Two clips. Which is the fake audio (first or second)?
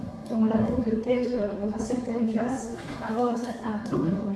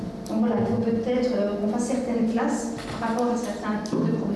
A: first